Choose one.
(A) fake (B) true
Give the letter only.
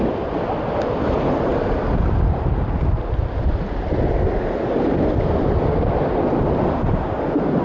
B